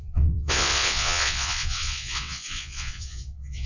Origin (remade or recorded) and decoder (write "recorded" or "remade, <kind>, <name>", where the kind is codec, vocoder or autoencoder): remade, vocoder, WaveNeXt